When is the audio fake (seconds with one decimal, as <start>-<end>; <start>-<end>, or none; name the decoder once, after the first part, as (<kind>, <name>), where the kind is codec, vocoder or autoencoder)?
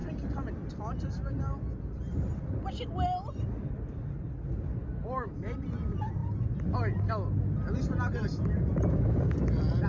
none